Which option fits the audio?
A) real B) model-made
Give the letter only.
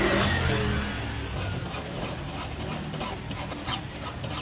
A